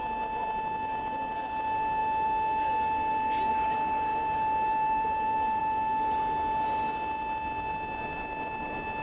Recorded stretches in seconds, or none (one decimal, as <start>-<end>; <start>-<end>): 0.0-4.1; 5.6-9.0